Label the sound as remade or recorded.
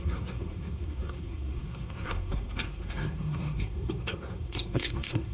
remade